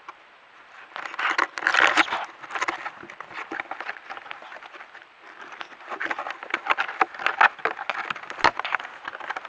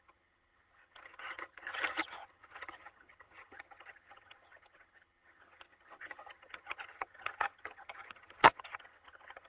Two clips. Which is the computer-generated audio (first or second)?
second